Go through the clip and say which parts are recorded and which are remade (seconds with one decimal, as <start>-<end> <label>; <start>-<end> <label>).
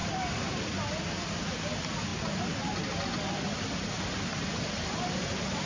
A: 0.0-1.1 recorded; 1.1-2.1 remade; 2.1-3.4 recorded; 3.4-5.7 remade